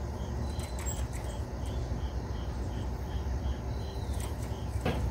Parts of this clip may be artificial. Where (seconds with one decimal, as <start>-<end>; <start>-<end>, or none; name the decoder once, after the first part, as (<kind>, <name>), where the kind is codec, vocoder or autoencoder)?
none